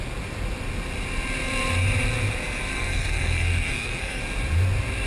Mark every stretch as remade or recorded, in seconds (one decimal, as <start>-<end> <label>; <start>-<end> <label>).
0.0-2.7 recorded; 2.7-4.2 remade; 4.2-5.1 recorded